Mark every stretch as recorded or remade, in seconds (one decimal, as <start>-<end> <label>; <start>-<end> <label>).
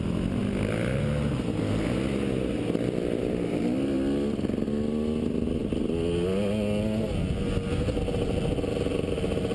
0.0-9.5 recorded